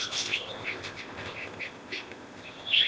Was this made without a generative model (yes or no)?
no